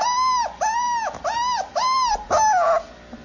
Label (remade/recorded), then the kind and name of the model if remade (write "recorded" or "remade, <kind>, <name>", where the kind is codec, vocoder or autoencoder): recorded